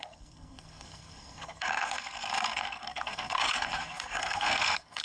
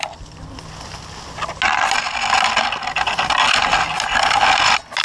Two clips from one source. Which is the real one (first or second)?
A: second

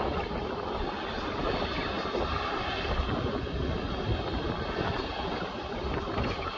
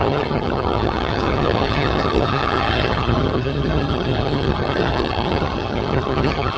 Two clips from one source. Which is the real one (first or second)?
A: first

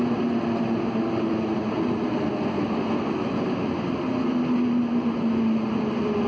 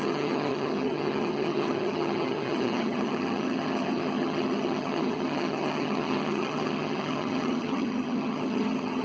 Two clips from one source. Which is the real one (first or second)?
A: first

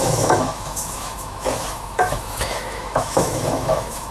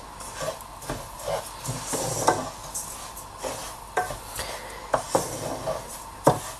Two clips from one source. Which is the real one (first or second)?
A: second